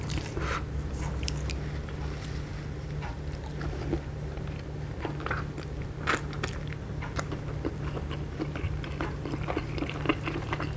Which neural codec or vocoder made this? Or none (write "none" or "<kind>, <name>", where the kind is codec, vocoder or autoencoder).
vocoder, BigVGAN v2